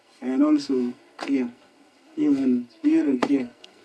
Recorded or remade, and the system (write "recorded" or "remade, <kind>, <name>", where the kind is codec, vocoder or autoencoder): remade, codec, SNAC